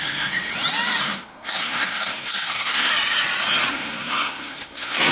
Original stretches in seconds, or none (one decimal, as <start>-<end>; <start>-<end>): 0.5-1.0; 2.9-3.7